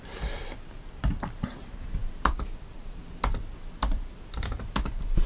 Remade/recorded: recorded